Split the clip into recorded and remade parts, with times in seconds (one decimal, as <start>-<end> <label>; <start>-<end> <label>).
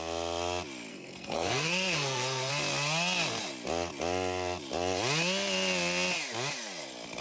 0.0-0.9 recorded; 0.9-2.5 remade; 2.5-7.2 recorded